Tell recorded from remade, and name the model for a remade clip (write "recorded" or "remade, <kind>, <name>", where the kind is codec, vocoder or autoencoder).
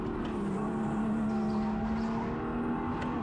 recorded